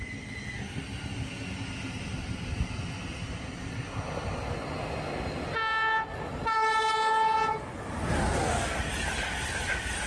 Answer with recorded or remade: recorded